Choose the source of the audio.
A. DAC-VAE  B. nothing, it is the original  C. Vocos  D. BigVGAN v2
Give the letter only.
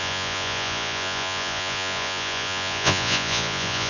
C